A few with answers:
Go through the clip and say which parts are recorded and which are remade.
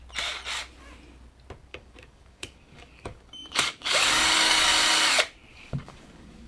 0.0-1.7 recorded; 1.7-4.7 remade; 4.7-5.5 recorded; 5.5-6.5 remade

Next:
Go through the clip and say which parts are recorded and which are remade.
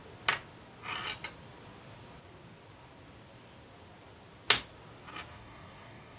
0.0-5.3 recorded; 5.3-6.2 remade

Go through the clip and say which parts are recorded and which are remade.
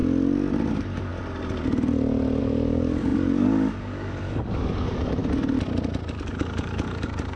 0.0-0.7 recorded; 0.7-1.1 remade; 1.1-2.4 recorded; 2.4-5.2 remade; 5.2-6.1 recorded; 6.1-7.4 remade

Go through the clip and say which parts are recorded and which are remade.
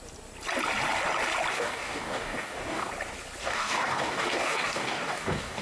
0.0-1.5 recorded; 1.5-2.9 remade; 2.9-3.4 recorded; 3.4-5.6 remade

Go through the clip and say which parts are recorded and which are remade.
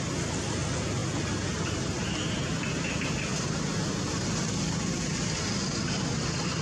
0.0-6.6 recorded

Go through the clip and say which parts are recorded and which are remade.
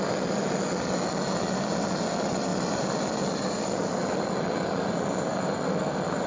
0.0-6.3 recorded